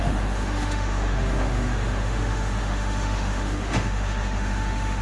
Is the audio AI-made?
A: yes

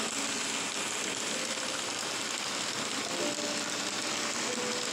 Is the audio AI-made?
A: no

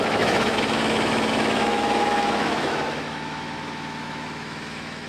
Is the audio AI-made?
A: yes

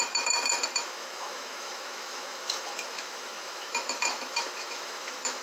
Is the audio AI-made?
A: yes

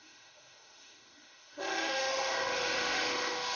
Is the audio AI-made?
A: yes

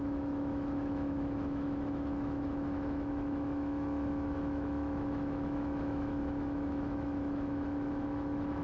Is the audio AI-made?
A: yes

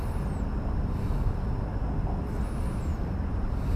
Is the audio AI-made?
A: no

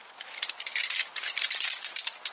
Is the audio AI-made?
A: no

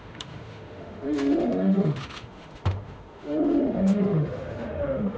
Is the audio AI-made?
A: yes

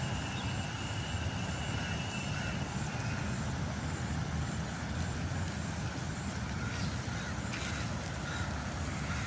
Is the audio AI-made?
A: no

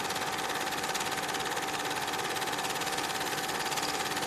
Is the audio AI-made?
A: no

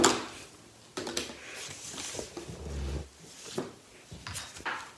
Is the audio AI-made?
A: no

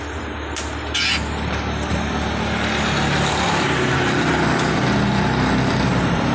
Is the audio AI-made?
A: no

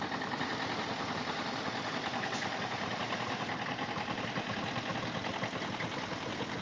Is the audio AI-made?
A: no